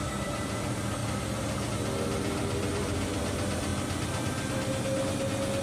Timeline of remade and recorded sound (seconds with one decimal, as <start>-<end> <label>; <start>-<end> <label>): 0.0-1.0 remade; 1.0-1.7 recorded; 1.7-3.7 remade; 3.7-5.6 recorded